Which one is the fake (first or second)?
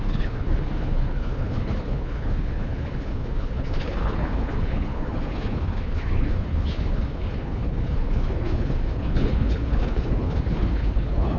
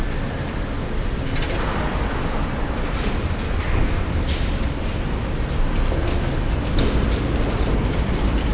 first